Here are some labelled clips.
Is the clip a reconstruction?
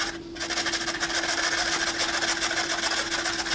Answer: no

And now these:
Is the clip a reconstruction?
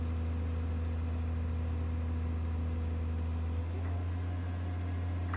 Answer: no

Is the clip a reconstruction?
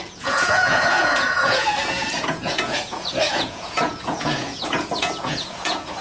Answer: yes